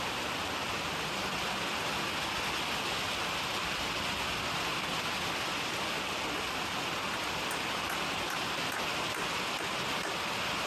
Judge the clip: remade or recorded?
recorded